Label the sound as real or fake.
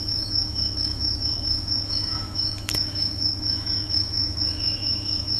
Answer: fake